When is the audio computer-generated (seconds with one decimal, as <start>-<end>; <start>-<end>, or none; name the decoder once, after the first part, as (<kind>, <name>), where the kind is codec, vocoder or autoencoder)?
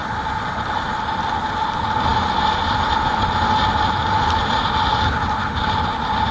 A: 0.5-6.3 (vocoder, BigVGAN v2)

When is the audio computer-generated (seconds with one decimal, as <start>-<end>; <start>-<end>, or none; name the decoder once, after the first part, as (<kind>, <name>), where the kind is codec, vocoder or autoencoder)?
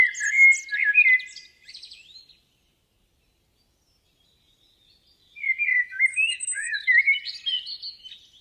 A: 5.7-7.2 (autoencoder, DAC-VAE)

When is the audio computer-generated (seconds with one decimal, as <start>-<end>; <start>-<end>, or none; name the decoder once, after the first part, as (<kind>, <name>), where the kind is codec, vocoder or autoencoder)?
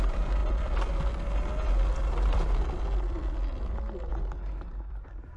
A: none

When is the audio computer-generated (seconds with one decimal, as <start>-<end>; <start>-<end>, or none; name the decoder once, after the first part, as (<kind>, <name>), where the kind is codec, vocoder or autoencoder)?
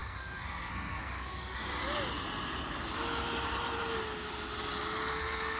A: 0.0-1.7 (codec, SNAC); 5.1-5.6